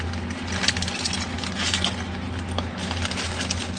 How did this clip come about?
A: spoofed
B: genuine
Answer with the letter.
B